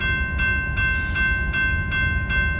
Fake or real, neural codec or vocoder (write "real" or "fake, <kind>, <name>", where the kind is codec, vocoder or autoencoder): real